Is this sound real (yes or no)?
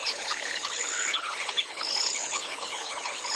no